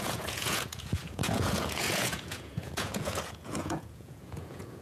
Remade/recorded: remade